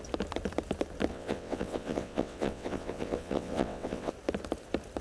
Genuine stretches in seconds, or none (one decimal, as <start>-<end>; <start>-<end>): 0.0-1.1; 4.1-5.0